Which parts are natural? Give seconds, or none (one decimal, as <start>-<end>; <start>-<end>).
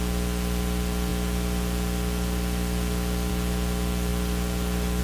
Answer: 0.0-5.0